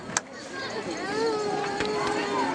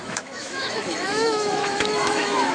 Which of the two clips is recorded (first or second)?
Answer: first